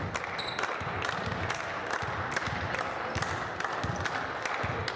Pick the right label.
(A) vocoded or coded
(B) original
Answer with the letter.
B